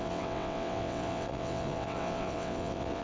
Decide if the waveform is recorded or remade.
remade